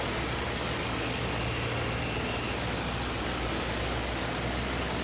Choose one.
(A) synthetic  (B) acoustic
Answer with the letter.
B